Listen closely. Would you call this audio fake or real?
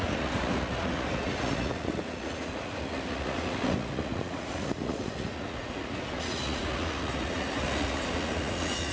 fake